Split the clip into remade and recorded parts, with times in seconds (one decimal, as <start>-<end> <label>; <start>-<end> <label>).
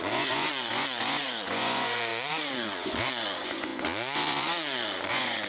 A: 0.0-5.5 remade